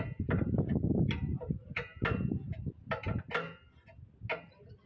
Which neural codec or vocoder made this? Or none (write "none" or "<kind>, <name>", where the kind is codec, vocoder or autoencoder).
none